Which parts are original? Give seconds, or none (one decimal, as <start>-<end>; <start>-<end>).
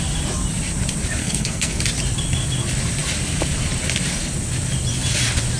0.0-1.2; 1.8-5.6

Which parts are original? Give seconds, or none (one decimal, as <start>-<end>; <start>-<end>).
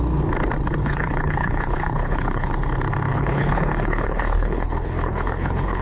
0.0-0.8; 2.5-3.1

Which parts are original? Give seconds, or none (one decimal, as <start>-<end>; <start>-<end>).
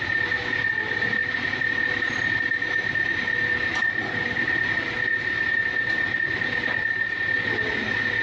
0.0-8.2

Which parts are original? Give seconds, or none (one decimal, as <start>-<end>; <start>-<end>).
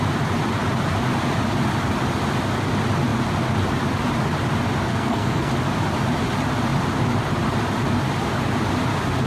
0.0-4.9; 5.5-9.3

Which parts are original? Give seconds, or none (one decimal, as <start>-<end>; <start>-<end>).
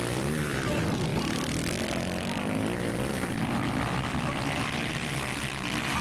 0.0-6.0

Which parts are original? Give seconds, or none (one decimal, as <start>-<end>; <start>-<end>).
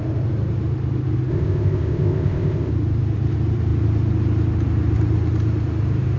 0.0-1.3; 2.7-6.2